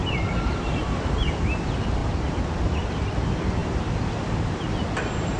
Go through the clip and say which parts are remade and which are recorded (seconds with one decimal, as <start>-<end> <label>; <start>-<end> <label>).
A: 0.0-1.3 remade; 1.3-5.4 recorded

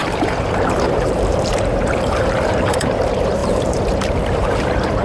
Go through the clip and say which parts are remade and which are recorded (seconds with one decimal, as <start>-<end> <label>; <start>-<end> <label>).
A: 0.0-5.0 remade

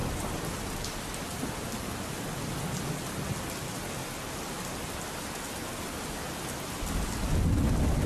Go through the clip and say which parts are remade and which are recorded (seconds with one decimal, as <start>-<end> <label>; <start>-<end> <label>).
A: 0.0-2.1 remade; 2.1-8.1 recorded

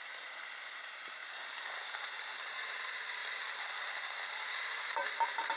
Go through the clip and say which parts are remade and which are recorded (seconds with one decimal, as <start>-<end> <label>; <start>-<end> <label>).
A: 0.0-3.2 remade; 3.2-4.3 recorded; 4.3-5.6 remade

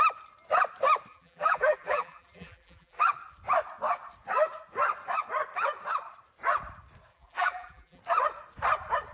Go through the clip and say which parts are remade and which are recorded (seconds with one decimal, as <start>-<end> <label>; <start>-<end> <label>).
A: 0.0-1.1 recorded; 1.1-3.0 remade; 3.0-7.1 recorded; 7.1-8.0 remade; 8.0-9.1 recorded